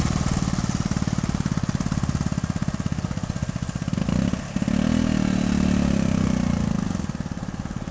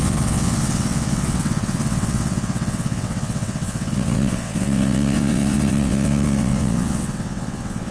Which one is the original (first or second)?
first